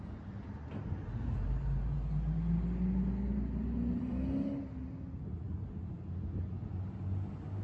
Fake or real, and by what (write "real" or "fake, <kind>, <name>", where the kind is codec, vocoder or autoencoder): real